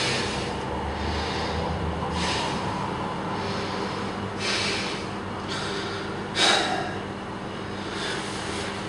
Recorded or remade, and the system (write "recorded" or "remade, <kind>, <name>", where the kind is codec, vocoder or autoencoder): recorded